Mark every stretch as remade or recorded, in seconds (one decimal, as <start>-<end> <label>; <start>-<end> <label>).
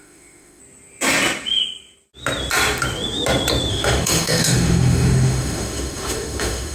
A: 0.0-0.6 remade; 0.6-3.7 recorded; 3.7-6.7 remade